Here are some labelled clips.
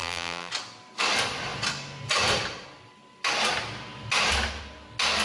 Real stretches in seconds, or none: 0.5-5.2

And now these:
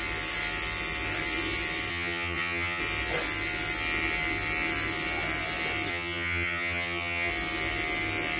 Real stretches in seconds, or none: 0.0-1.9; 2.8-5.9; 7.3-8.4

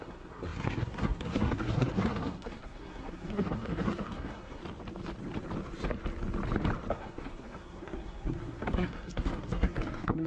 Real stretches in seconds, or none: 4.6-6.9

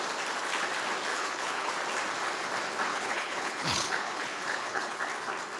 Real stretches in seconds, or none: 0.0-1.1; 1.7-2.9; 5.0-5.6

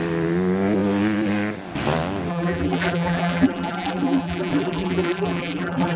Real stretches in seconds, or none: 0.0-2.3

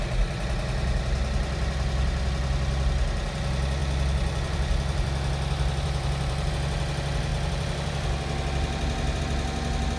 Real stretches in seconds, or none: 0.0-3.8; 6.5-7.3; 9.2-10.0

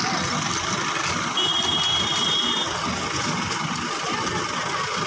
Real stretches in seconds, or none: 0.0-5.1

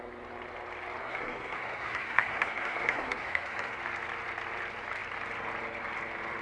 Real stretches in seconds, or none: 0.0-1.0; 3.8-6.4